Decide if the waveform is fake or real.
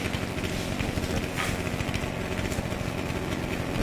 real